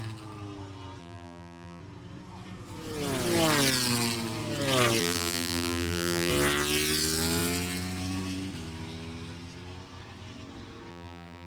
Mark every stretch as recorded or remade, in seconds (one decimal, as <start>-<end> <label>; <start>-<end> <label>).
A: 0.0-1.0 recorded; 1.0-1.8 remade; 1.8-5.0 recorded; 5.0-6.3 remade; 6.3-10.9 recorded; 10.9-11.5 remade